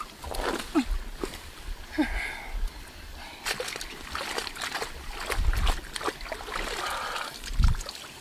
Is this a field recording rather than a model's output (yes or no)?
yes